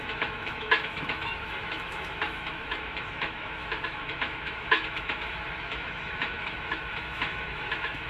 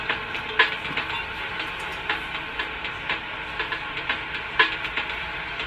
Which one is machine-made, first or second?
first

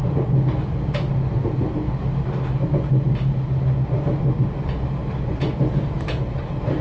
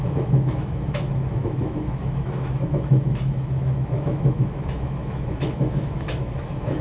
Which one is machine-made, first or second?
second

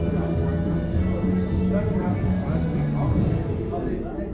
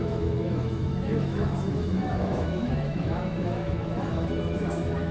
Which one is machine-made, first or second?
second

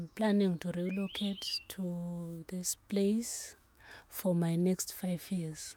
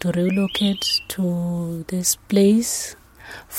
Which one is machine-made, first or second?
first